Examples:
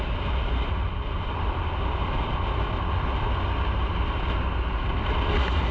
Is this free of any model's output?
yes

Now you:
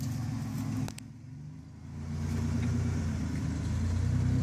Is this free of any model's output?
yes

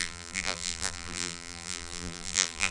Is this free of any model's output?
no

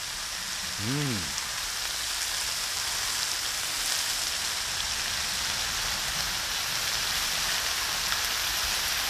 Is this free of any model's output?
yes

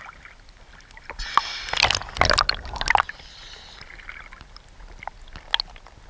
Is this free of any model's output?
yes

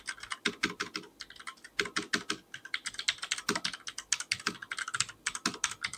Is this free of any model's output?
yes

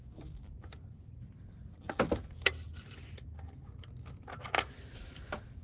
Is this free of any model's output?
yes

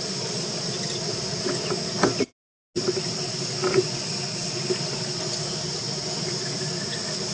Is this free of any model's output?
yes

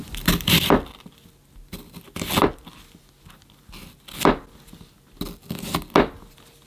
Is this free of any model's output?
yes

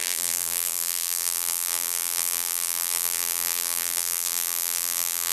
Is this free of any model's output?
no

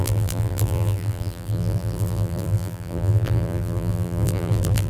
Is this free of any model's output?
no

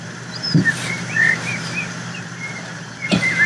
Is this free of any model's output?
no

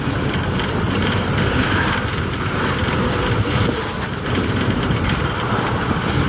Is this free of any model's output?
no